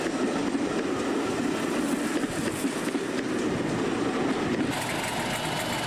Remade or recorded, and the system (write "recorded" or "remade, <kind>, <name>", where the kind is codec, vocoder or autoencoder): recorded